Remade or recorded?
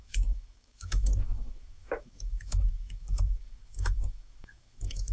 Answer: remade